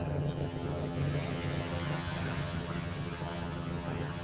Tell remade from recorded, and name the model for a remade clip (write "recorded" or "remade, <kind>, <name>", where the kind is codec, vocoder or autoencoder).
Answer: remade, vocoder, HiFi-GAN